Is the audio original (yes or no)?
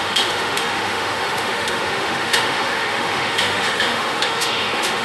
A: no